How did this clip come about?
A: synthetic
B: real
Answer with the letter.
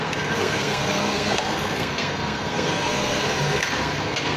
A